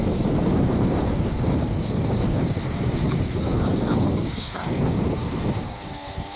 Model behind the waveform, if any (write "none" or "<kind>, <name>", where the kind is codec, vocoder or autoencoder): codec, DAC